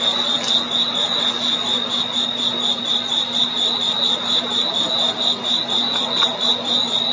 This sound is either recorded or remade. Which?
recorded